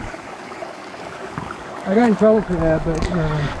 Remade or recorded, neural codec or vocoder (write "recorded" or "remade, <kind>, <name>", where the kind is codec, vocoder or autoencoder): remade, codec, DAC